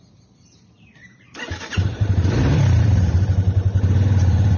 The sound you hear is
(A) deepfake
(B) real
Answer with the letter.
A